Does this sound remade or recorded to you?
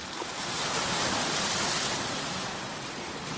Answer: recorded